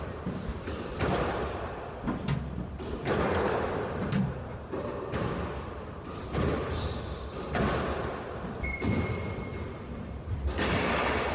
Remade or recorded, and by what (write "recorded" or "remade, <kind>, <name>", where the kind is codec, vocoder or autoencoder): recorded